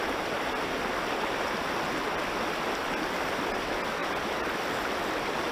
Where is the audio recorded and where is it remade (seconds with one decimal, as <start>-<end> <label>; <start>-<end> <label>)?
0.0-5.5 recorded